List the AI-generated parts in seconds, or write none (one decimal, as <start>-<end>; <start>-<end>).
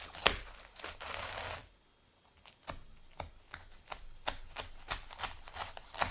none